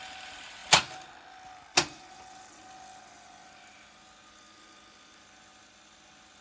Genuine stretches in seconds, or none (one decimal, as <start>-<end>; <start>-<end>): 0.0-6.4